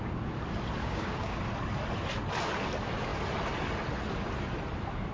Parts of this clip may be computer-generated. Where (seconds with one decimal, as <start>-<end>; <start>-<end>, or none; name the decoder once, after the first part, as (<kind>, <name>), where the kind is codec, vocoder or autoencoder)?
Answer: 0.8-1.4 (codec, DAC)